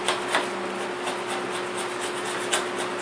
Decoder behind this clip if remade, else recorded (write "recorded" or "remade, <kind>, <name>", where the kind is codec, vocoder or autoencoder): recorded